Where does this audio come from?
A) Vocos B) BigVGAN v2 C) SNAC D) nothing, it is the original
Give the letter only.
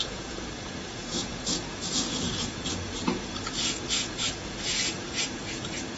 A